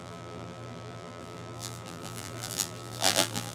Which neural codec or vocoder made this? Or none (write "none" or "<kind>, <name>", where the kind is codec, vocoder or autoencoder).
vocoder, BigVGAN v2